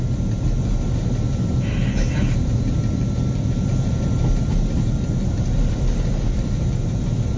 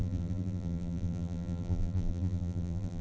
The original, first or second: first